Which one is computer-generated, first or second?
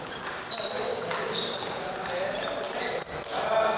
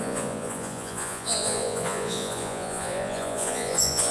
second